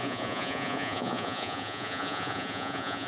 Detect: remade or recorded remade